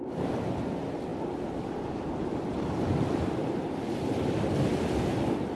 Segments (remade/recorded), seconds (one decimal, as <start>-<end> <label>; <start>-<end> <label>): 0.0-5.5 recorded